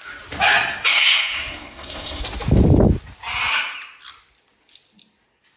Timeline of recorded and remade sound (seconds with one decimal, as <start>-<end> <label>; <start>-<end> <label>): 0.0-0.9 recorded; 0.9-2.2 remade; 2.2-5.6 recorded

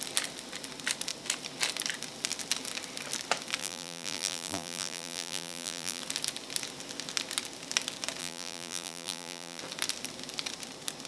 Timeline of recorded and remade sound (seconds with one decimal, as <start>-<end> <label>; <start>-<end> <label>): 0.0-3.6 recorded; 3.6-6.0 remade; 6.0-8.2 recorded; 8.2-9.6 remade; 9.6-11.1 recorded

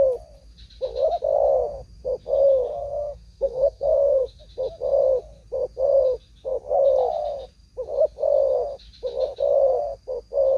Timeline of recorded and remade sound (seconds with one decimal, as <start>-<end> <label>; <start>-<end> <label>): 0.0-2.7 recorded; 2.7-4.4 remade; 4.4-10.6 recorded

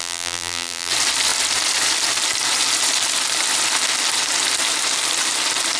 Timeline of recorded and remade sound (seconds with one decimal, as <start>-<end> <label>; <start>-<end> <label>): 0.0-0.9 remade; 0.9-5.8 recorded

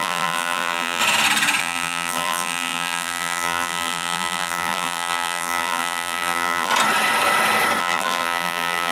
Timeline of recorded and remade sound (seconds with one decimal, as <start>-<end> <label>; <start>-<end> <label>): 0.0-1.0 remade; 1.0-1.6 recorded; 1.6-6.7 remade; 6.7-7.8 recorded; 7.8-8.9 remade

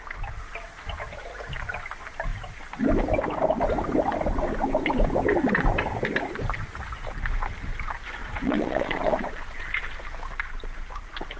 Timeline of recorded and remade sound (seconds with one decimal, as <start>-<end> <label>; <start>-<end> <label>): 0.0-8.2 recorded; 8.2-9.3 remade; 9.3-11.4 recorded

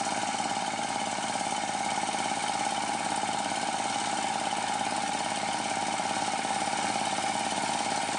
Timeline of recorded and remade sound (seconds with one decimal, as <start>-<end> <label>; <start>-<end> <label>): 0.0-8.2 remade

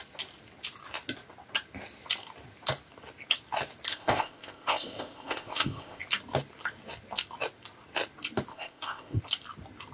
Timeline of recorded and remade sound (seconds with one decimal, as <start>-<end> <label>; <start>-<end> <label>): 0.0-3.9 recorded; 3.9-6.0 remade; 6.0-8.5 recorded; 8.5-9.2 remade; 9.2-9.9 recorded